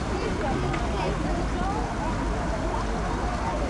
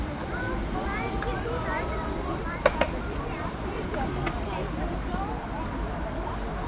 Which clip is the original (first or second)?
first